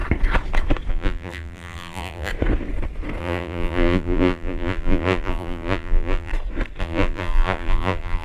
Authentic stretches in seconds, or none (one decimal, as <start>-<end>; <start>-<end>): 0.0-0.9; 2.3-3.2; 6.3-6.8